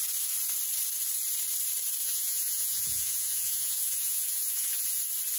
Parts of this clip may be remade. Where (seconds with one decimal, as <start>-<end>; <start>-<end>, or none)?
2.0-5.0